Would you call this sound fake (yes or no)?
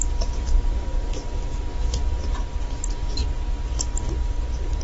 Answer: no